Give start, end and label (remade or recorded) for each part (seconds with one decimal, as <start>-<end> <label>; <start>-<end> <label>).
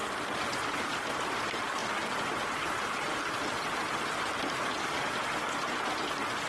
0.0-6.5 recorded